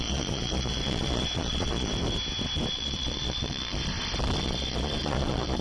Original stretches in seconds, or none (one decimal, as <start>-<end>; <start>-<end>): 1.9-2.7; 3.8-4.4